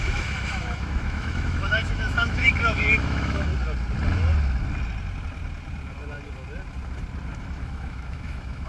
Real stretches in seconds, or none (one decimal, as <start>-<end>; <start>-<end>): 3.5-7.4